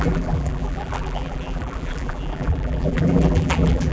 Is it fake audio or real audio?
fake